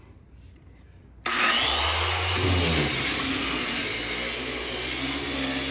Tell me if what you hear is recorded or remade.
recorded